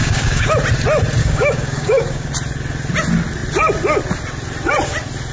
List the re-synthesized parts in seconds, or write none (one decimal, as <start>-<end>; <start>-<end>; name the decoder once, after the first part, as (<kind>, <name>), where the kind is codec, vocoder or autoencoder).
0.0-0.5 (codec, DAC); 1.2-2.3